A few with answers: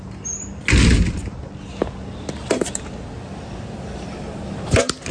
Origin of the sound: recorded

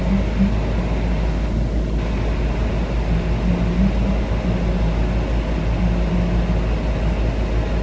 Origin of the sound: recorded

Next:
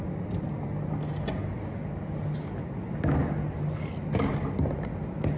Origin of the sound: recorded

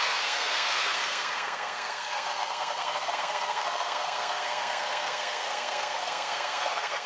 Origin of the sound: remade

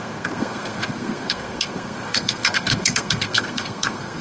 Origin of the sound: remade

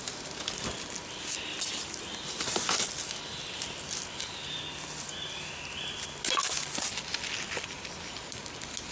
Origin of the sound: recorded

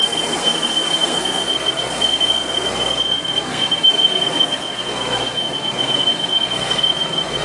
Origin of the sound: remade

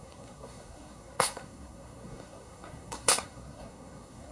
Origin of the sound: remade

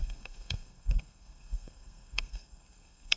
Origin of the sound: remade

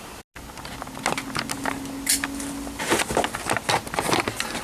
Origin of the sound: recorded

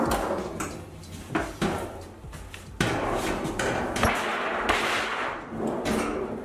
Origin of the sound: recorded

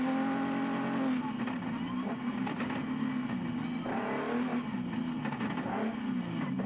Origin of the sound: recorded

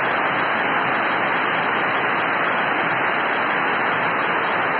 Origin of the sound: recorded